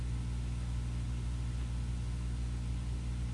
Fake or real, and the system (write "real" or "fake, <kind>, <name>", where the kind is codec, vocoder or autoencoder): real